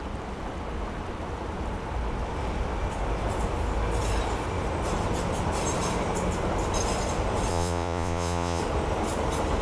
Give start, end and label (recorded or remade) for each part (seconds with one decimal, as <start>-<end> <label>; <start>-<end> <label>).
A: 0.0-7.5 recorded; 7.5-8.6 remade; 8.6-9.6 recorded